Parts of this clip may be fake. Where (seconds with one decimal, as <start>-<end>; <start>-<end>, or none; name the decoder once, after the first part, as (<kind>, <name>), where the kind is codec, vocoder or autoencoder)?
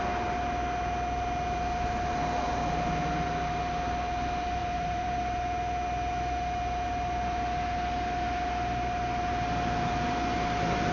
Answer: 4.6-5.2 (vocoder, BigVGAN v2)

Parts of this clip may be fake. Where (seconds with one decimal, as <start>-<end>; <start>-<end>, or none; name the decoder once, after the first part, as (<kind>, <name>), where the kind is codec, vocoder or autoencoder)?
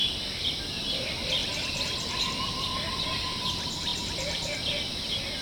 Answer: none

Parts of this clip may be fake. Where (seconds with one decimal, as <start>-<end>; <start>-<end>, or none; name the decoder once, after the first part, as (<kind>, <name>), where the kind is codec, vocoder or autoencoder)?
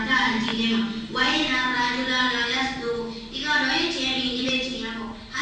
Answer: 0.0-0.5 (vocoder, BigVGAN v2); 3.7-4.7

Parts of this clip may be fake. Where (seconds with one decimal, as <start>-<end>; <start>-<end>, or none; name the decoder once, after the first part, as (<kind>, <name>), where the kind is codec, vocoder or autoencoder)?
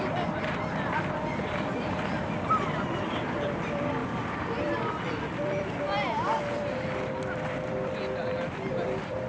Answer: 0.0-9.3 (vocoder, BigVGAN v2)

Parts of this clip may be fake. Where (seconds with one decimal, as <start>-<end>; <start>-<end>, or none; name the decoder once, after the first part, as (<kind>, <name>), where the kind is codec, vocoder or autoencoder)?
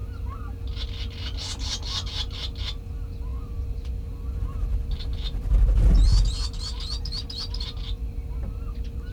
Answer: 3.3-3.9 (vocoder, BigVGAN v2)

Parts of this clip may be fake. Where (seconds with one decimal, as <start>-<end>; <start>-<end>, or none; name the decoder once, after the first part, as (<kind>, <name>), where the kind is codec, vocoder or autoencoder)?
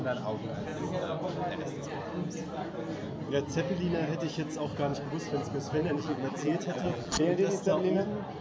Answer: 5.8-7.2 (vocoder, BigVGAN v2)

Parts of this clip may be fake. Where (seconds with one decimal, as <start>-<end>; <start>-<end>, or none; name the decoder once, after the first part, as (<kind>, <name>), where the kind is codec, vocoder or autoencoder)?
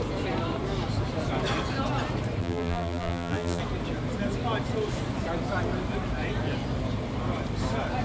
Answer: 2.4-3.6 (vocoder, BigVGAN v2)